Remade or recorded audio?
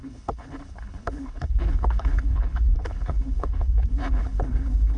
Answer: remade